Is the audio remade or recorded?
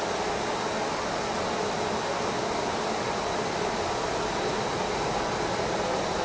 recorded